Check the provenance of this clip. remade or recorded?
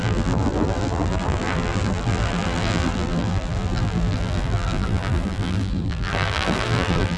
remade